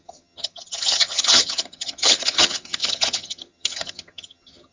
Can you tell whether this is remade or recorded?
remade